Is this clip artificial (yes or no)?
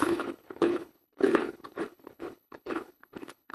yes